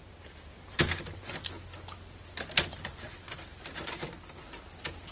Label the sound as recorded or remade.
recorded